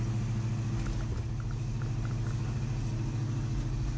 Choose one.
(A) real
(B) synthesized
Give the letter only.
A